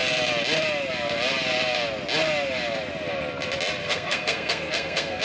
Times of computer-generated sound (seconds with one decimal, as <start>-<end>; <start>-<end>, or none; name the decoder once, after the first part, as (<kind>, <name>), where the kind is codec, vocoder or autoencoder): 3.8-5.2 (codec, SNAC)